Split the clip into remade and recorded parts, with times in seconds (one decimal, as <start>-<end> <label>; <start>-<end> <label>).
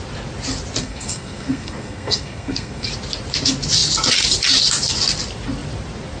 0.0-0.8 recorded; 0.8-2.9 remade; 2.9-6.2 recorded